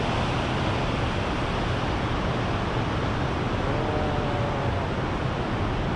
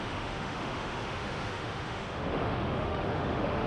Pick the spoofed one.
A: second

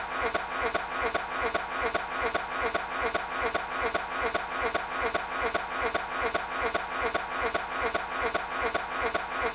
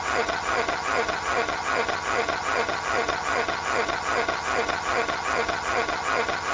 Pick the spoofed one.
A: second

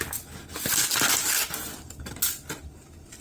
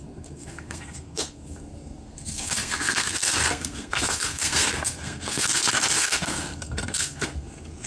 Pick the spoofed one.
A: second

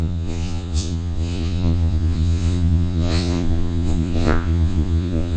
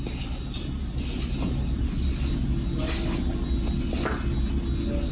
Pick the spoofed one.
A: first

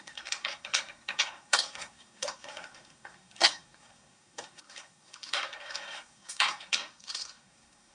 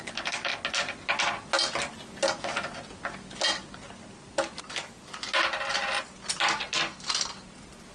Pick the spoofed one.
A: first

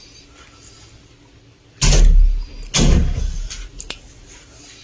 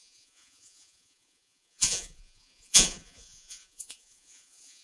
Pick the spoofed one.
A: second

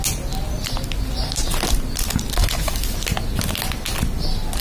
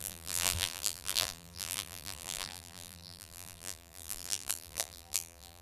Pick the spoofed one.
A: second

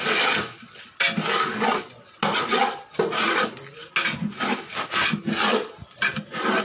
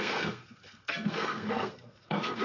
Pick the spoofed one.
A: second